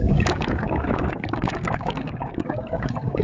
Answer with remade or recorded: remade